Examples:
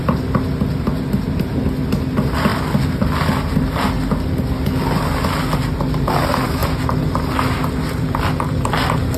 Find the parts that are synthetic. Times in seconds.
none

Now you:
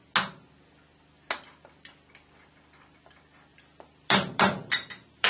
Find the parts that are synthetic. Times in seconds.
3.5-5.3 (vocoder, BigVGAN v2)